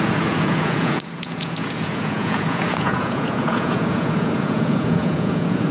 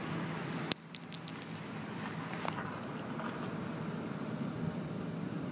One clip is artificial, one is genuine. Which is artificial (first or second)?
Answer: first